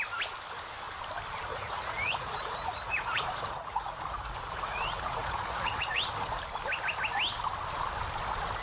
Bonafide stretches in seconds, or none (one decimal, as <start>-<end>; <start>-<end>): 0.0-1.5; 6.0-8.6